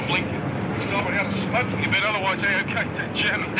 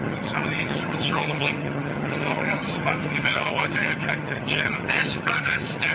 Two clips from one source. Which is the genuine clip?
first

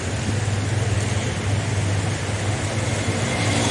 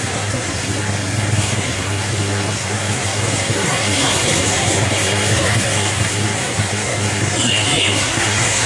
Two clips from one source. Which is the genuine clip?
first